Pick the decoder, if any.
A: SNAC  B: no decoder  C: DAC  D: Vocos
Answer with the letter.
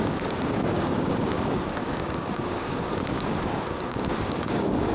C